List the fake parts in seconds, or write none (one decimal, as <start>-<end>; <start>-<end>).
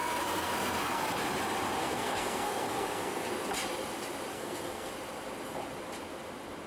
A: 0.0-1.0; 1.8-3.3; 4.3-4.9